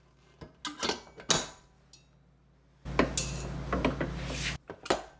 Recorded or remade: recorded